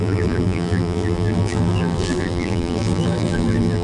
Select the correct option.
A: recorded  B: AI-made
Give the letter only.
B